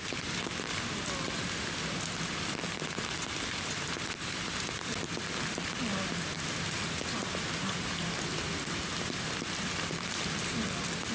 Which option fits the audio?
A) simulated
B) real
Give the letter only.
B